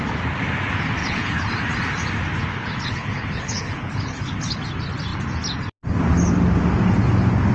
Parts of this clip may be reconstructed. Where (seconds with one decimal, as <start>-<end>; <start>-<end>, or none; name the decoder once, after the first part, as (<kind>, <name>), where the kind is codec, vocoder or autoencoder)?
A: 1.0-1.5 (codec, HILCodec); 2.5-4.6